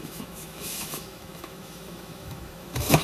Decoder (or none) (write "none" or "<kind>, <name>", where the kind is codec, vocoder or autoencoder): autoencoder, DAC-VAE